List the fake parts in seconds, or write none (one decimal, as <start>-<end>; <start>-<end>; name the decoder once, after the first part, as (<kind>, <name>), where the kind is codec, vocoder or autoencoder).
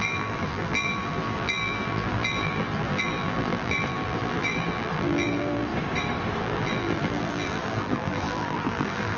0.0-5.7 (vocoder, BigVGAN v2); 6.4-9.2